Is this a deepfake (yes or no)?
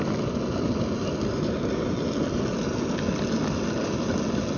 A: no